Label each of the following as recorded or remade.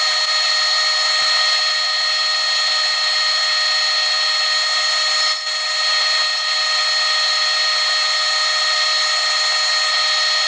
recorded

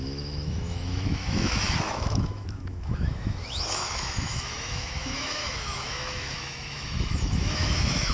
remade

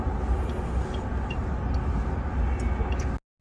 recorded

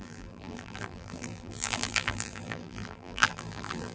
remade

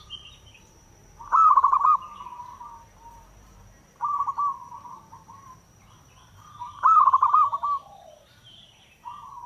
remade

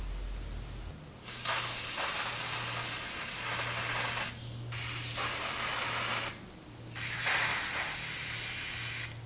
recorded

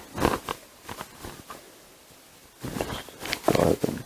recorded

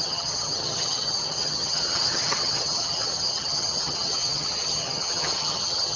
remade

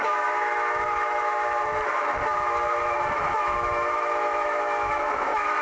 remade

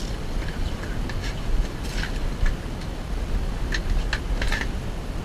recorded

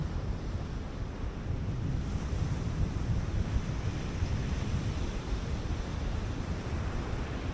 recorded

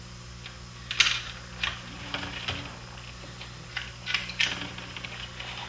recorded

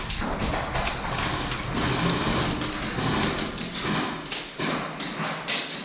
recorded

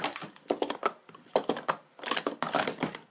recorded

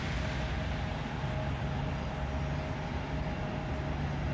recorded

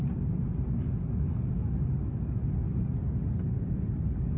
recorded